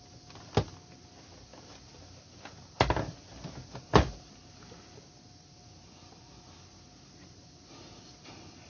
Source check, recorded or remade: recorded